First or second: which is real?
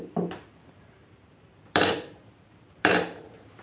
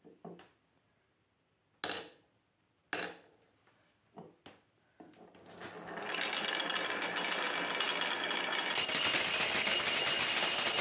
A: second